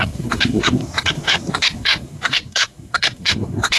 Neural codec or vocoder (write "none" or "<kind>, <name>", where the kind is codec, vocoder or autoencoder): codec, SNAC